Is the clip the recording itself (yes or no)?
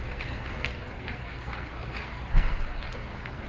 no